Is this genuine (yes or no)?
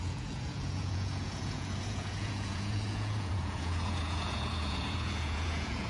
no